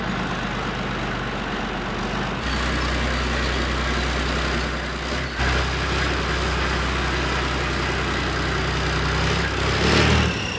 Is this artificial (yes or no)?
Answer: no